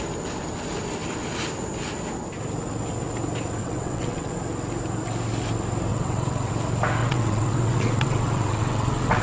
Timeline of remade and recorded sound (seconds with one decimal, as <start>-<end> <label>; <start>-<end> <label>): 0.0-3.6 recorded; 3.6-4.3 remade; 4.3-5.9 recorded; 5.9-6.5 remade; 6.5-7.0 recorded; 7.0-9.2 remade